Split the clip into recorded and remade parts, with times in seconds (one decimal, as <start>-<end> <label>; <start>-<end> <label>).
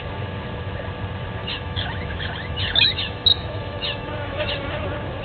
0.0-1.4 recorded; 1.4-4.5 remade; 4.5-5.2 recorded